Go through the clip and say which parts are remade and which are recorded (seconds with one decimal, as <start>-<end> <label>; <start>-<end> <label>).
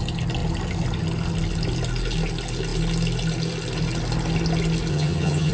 0.0-4.9 recorded; 4.9-5.5 remade